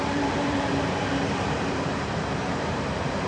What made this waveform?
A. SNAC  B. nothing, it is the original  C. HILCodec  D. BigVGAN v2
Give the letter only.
D